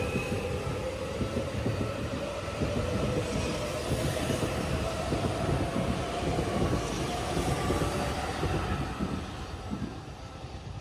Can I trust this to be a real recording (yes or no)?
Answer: yes